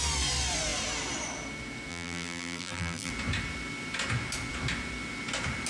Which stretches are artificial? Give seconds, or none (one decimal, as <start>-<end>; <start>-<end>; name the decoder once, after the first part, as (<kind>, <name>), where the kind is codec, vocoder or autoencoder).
1.9-3.1 (vocoder, BigVGAN v2)